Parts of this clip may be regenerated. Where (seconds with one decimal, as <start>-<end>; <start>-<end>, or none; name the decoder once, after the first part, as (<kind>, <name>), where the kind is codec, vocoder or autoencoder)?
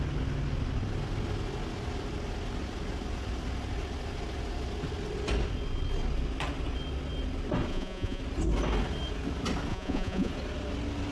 7.7-8.2 (vocoder, Vocos); 9.7-10.3